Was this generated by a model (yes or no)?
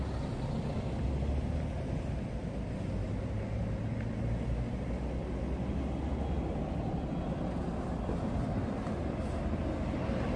no